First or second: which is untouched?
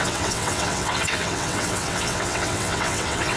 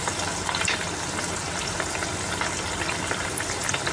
second